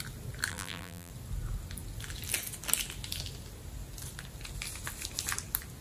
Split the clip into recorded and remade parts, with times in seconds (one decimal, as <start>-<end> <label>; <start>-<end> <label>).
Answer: 0.0-0.5 recorded; 0.5-1.1 remade; 1.1-5.8 recorded